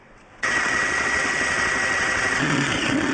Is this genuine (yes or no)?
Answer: no